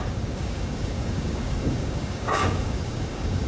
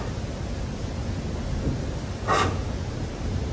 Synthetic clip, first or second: first